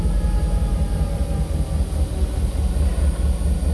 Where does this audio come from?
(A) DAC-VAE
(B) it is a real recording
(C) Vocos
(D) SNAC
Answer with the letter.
B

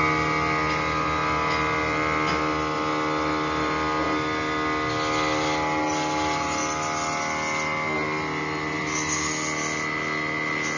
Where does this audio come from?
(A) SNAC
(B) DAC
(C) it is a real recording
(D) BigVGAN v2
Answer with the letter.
C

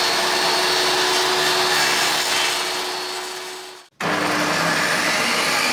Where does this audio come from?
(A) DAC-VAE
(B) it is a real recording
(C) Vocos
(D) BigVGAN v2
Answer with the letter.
B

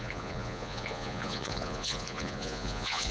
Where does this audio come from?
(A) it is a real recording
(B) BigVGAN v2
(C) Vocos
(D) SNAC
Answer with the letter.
C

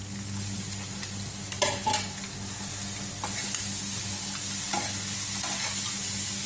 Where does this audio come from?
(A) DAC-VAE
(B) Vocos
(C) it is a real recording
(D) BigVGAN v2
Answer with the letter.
C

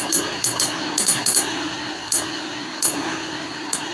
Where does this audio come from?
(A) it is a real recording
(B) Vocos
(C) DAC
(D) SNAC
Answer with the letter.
D